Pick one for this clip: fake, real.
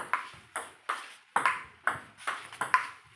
real